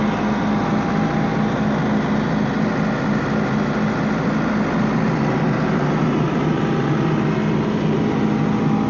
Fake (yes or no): no